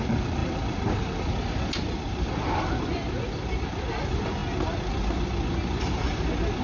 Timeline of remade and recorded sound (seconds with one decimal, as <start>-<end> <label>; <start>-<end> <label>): 0.0-6.6 recorded